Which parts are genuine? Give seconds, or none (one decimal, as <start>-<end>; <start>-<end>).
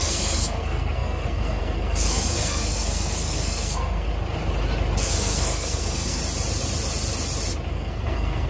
4.1-5.0; 6.2-7.7